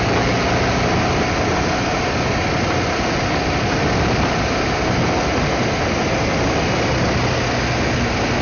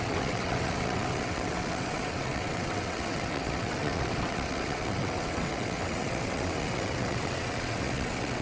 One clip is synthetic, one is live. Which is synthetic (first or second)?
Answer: second